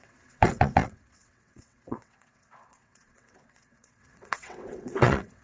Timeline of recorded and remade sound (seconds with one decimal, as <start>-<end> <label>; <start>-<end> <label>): 0.0-5.4 remade